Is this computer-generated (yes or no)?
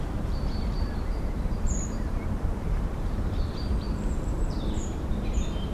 yes